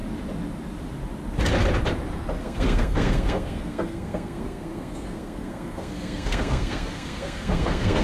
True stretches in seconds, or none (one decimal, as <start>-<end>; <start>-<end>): 0.0-2.4